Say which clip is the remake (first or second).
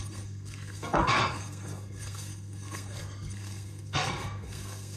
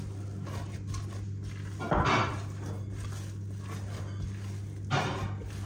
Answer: first